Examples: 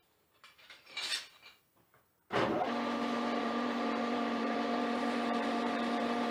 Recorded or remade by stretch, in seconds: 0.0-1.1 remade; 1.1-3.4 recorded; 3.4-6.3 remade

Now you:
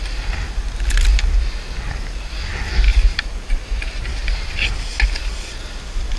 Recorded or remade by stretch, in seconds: 0.0-2.9 recorded; 2.9-4.6 remade; 4.6-6.2 recorded

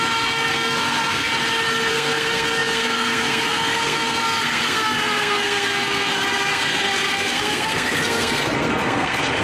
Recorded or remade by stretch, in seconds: 0.0-1.3 remade; 1.3-1.9 recorded; 1.9-9.4 remade

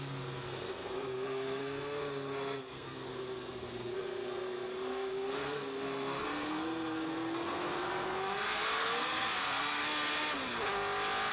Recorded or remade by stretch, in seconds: 0.0-9.8 remade; 9.8-11.3 recorded